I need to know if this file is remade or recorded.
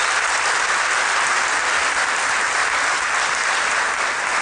remade